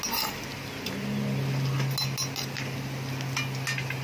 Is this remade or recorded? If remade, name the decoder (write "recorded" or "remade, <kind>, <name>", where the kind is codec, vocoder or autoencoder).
recorded